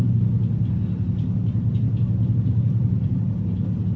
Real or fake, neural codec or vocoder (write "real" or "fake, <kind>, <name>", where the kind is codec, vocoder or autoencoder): real